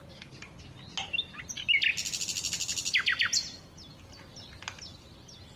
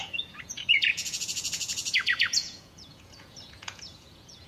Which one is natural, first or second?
first